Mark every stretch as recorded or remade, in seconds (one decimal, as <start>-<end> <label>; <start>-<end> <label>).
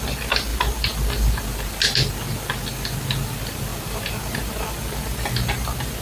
0.0-6.0 recorded